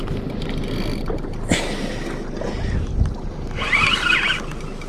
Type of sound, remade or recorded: recorded